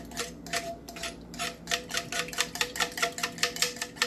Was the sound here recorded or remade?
recorded